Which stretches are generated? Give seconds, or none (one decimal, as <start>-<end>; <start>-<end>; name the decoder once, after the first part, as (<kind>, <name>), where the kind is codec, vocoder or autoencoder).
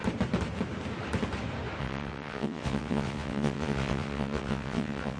1.8-5.2 (vocoder, WaveNeXt)